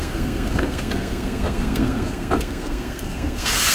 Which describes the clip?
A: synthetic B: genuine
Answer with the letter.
A